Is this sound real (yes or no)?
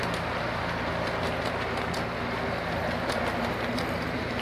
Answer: yes